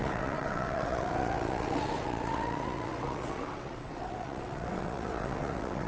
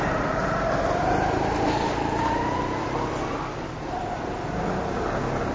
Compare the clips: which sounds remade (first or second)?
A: first